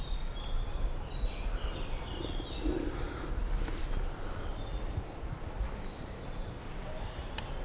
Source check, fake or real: real